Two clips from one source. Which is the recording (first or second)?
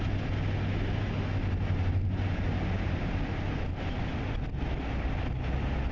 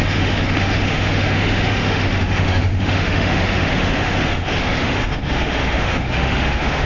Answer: first